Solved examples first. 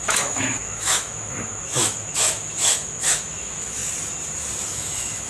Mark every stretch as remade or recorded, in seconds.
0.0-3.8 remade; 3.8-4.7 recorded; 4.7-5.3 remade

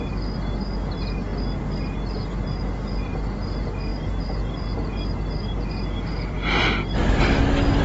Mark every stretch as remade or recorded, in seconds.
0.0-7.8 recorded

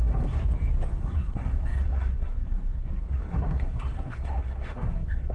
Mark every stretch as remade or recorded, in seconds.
0.0-0.4 remade; 0.4-0.9 recorded; 0.9-5.3 remade